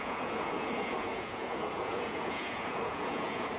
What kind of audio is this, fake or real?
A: fake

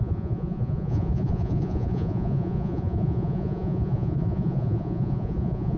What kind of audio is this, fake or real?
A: fake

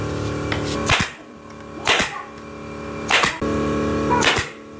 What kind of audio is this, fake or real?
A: real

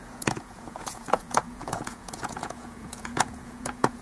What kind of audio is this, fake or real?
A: fake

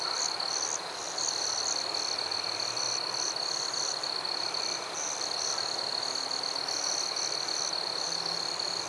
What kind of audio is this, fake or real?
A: real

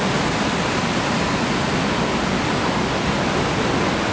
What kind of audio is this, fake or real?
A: real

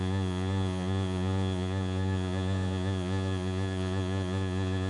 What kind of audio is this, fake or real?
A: fake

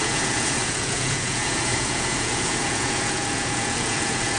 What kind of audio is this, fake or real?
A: fake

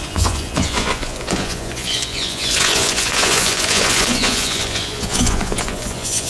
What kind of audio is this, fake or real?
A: fake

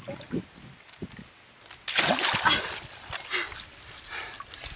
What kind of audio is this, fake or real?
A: real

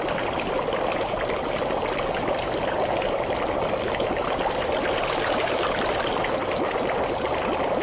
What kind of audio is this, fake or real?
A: real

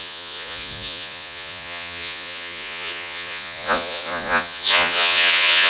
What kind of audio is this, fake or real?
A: fake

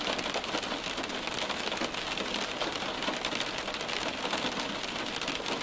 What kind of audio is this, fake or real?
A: real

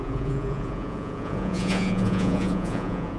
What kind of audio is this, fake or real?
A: fake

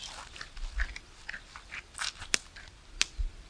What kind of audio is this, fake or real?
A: real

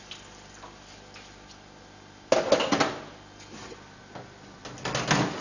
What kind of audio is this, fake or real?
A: real